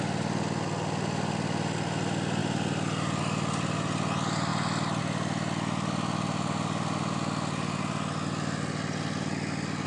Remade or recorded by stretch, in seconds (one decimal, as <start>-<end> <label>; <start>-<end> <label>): 0.0-9.9 recorded